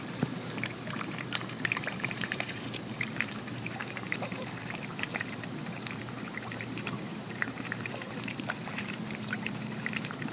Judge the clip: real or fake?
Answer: fake